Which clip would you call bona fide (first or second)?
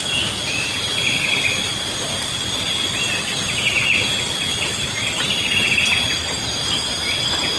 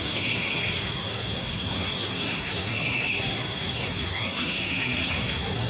first